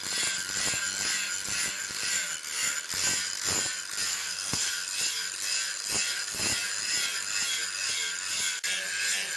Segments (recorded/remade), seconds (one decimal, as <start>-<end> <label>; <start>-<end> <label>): 0.0-4.1 recorded; 4.1-4.7 remade; 4.7-9.4 recorded